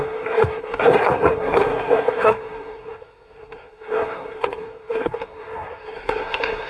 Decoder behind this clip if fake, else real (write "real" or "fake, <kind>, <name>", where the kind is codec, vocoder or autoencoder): fake, codec, SNAC